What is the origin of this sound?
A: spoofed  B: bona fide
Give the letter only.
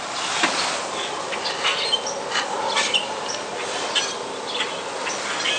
B